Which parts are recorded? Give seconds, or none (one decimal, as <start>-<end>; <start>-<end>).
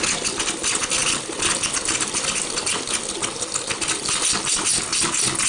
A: 0.0-5.5